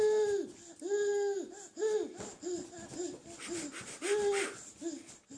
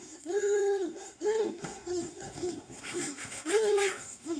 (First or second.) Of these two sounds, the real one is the first